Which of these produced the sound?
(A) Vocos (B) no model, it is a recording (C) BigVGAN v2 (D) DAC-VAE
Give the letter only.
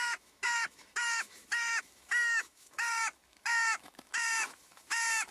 D